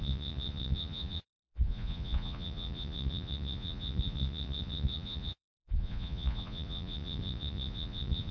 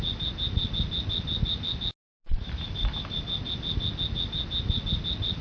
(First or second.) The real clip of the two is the second